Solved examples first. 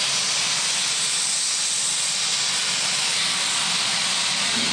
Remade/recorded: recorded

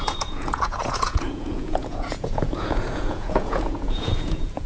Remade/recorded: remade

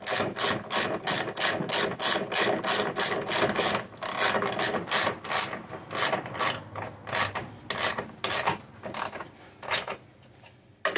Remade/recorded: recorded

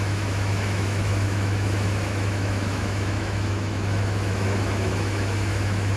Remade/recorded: remade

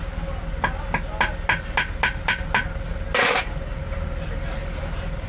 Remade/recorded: recorded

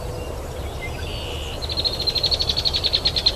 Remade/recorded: recorded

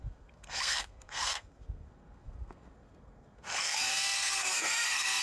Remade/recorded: remade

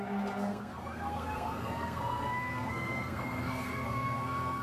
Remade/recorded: remade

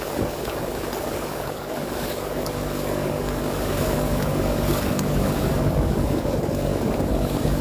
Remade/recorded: remade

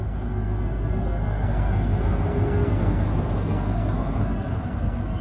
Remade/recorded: remade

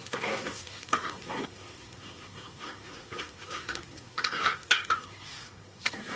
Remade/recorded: remade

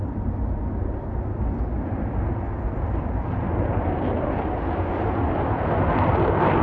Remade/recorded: recorded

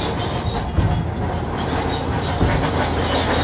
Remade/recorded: recorded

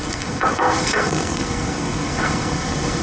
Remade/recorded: remade